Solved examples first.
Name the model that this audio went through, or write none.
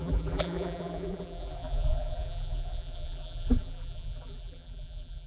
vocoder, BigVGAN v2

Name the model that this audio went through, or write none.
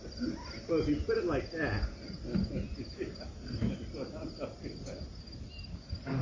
none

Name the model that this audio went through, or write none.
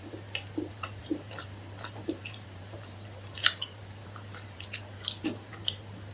vocoder, BigVGAN v2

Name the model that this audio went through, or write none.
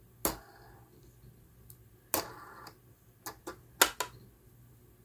none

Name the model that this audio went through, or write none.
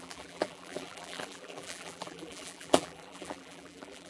vocoder, BigVGAN v2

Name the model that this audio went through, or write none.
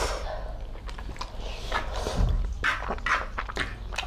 none